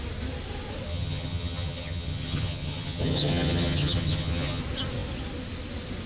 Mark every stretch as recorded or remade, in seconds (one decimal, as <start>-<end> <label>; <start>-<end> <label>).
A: 0.0-0.9 recorded; 0.9-4.6 remade; 4.6-6.1 recorded